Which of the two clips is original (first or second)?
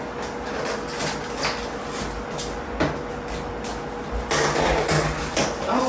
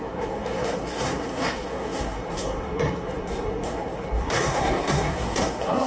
first